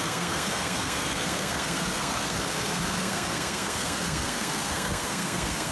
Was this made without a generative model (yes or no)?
no